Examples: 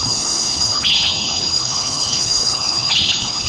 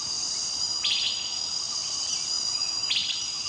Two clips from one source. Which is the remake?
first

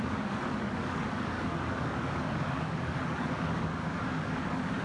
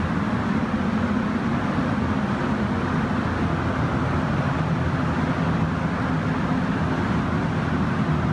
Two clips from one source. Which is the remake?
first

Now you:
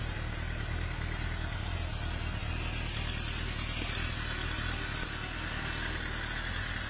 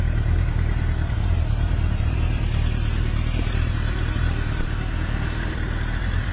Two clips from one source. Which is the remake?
second